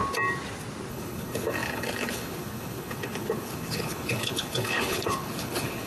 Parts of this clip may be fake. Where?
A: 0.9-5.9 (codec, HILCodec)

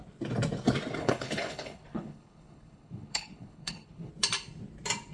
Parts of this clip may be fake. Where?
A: 1.0-4.1 (codec, HILCodec)

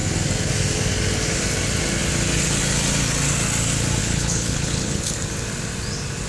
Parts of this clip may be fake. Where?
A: 4.0-5.0 (codec, HILCodec)

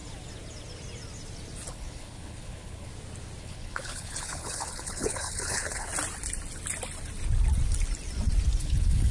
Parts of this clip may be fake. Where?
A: 1.7-2.9 (codec, HILCodec); 3.4-5.9; 8.6-9.1